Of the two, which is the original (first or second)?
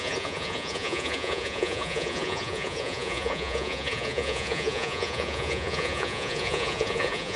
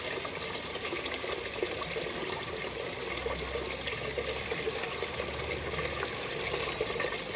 second